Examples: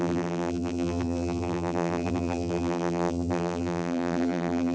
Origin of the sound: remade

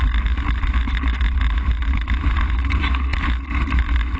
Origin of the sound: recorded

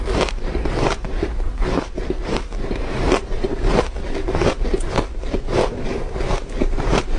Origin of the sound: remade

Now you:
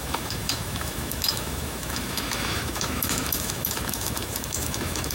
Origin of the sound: remade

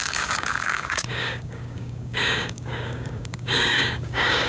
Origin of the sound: remade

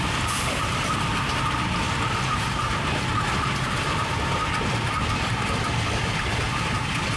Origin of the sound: remade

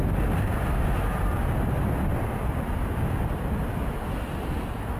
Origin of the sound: recorded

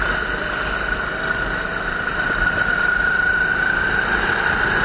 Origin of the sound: remade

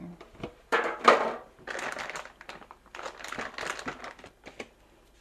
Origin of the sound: recorded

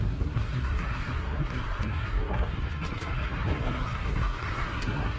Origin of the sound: remade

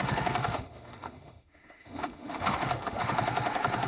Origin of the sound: remade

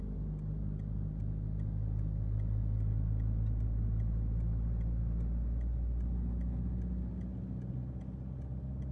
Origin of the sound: recorded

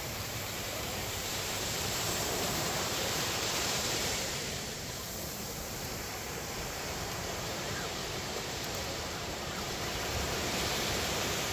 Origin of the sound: remade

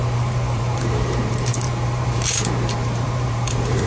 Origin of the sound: remade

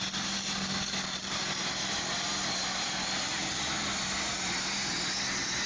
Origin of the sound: recorded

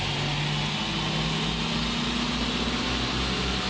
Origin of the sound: recorded